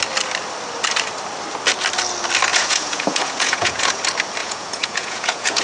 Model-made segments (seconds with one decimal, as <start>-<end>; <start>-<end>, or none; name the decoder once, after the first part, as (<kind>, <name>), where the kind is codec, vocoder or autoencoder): 2.5-4.0 (vocoder, Vocos); 4.4-5.6